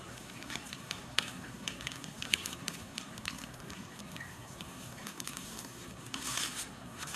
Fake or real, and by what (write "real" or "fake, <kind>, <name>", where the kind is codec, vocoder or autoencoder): fake, codec, SNAC